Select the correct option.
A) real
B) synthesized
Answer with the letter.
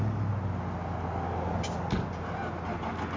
A